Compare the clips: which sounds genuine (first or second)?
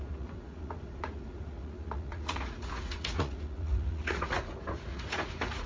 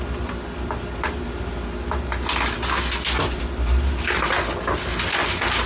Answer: second